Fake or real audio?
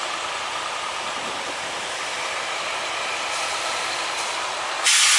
fake